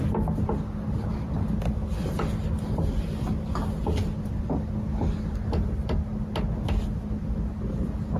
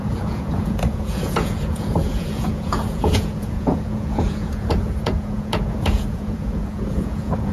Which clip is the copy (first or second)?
second